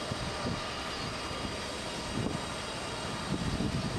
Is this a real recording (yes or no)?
yes